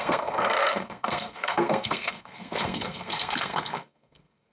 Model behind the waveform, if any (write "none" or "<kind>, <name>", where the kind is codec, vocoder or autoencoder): codec, SNAC